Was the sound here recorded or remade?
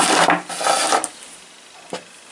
recorded